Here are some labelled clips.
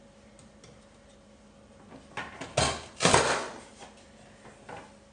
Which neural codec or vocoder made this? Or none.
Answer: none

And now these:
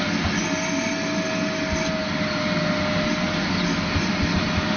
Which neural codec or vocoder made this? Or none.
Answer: none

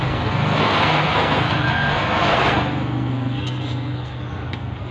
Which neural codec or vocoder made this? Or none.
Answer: codec, SNAC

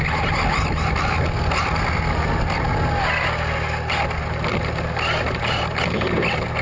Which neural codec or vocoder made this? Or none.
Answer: none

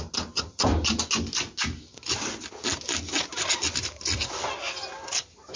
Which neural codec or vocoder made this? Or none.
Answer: none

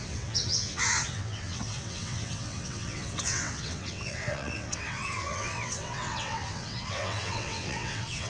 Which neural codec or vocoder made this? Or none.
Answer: vocoder, WaveNeXt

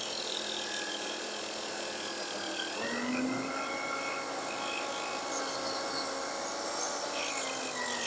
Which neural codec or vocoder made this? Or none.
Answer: none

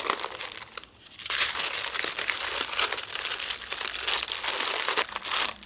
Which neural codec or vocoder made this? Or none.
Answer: vocoder, BigVGAN v2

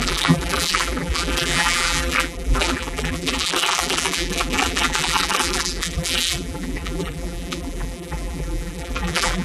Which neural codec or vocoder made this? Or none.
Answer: vocoder, BigVGAN v2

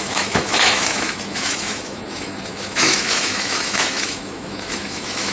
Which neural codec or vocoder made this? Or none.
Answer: autoencoder, DAC-VAE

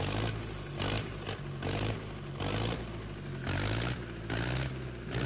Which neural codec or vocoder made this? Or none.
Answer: none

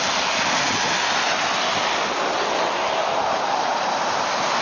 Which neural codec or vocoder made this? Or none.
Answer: none